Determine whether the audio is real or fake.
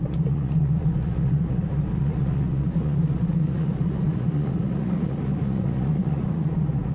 fake